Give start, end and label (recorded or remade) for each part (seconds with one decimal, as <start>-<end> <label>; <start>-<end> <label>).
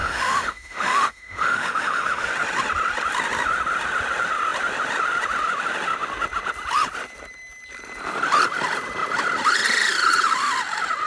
0.0-2.3 remade; 2.3-11.1 recorded